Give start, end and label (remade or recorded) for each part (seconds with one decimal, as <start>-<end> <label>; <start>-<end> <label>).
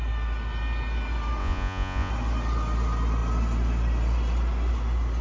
0.0-1.4 recorded; 1.4-2.1 remade; 2.1-5.2 recorded